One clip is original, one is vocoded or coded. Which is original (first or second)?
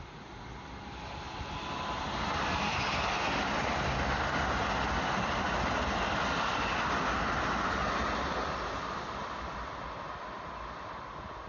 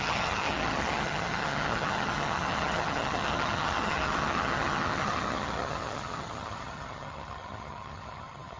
first